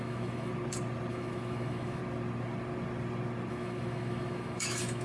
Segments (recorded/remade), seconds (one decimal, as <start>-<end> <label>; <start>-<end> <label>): 0.0-0.5 remade; 0.5-1.1 recorded; 1.1-2.0 remade; 2.0-3.5 recorded; 3.5-5.0 remade